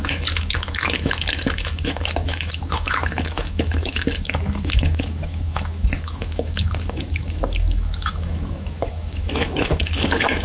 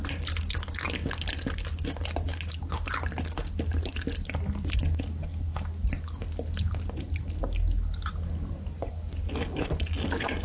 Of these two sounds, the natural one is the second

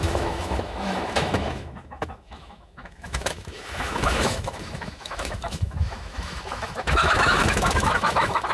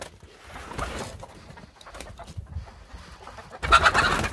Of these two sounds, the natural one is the second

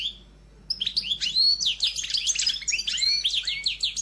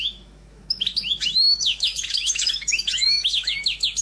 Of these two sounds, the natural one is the first